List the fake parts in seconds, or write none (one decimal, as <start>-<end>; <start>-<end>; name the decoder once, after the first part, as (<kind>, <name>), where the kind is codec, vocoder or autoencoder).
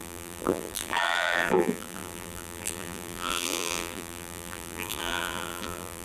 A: 0.0-6.0 (vocoder, BigVGAN v2)